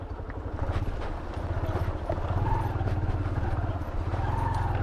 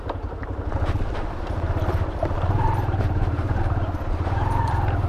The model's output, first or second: second